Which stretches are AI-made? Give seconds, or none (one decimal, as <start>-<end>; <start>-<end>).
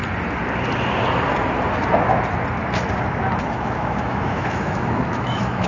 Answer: 3.4-5.7